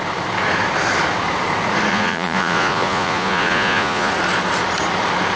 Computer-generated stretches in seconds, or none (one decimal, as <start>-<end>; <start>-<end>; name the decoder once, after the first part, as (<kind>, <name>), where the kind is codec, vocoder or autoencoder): 1.9-4.1 (vocoder, Vocos)